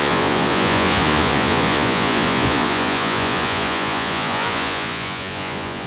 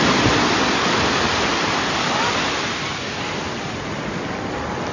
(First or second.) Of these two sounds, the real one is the second